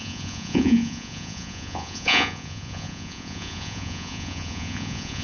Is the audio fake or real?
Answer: fake